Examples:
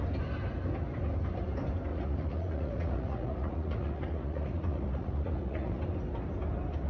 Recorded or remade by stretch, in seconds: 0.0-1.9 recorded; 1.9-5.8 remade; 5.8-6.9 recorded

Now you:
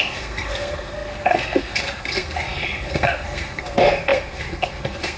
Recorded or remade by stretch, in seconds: 0.0-5.2 remade

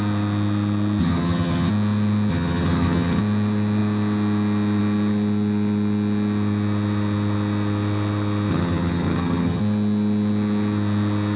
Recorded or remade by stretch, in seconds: 0.0-1.0 recorded; 1.0-1.7 remade; 1.7-2.3 recorded; 2.3-3.2 remade; 3.2-8.5 recorded; 8.5-9.6 remade; 9.6-11.4 recorded

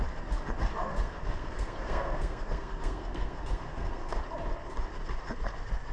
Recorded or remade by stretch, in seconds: 0.0-0.9 recorded; 0.9-4.2 remade; 4.2-5.9 recorded

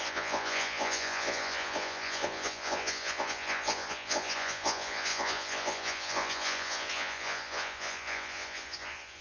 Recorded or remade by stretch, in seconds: 0.0-9.2 remade

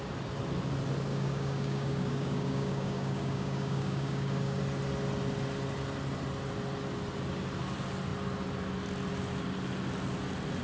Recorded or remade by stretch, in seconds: 0.0-1.1 recorded; 1.1-4.6 remade; 4.6-10.6 recorded

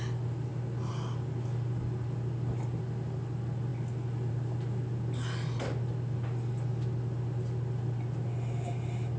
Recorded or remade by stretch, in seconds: 0.0-9.2 recorded